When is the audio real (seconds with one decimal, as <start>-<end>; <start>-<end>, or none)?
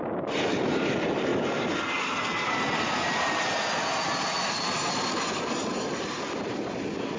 0.0-7.2